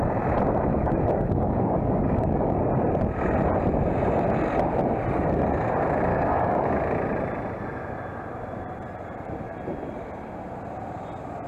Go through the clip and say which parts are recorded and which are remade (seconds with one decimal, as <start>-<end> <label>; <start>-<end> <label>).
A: 0.0-0.7 recorded; 0.7-2.6 remade; 2.6-6.1 recorded; 6.1-6.8 remade; 6.8-11.5 recorded